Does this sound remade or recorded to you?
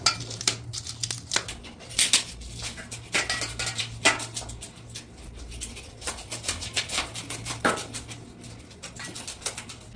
recorded